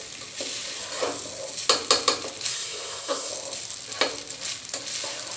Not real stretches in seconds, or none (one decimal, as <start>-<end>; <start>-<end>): 2.5-3.3